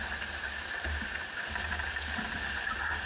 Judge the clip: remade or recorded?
recorded